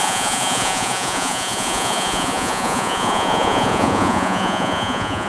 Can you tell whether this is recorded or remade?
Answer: remade